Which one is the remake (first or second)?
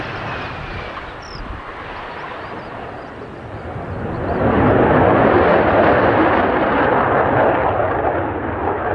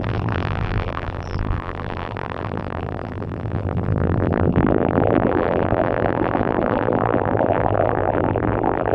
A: second